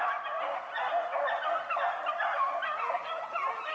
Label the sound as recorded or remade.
recorded